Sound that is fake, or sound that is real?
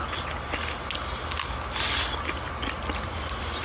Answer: real